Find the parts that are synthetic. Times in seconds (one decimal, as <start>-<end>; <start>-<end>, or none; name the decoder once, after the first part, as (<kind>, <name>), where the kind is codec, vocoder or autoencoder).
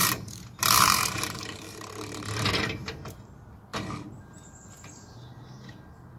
0.0-2.9 (vocoder, BigVGAN v2)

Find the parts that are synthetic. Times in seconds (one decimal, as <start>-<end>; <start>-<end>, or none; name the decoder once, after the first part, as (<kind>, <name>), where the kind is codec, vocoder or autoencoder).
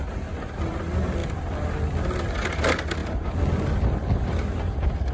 none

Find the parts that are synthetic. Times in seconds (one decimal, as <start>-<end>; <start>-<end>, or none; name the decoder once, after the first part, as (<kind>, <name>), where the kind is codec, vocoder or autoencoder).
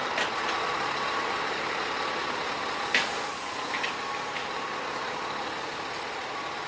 0.0-6.7 (vocoder, BigVGAN v2)